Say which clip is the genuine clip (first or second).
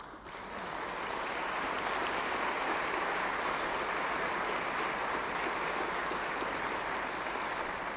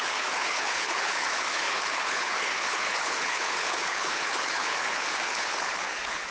first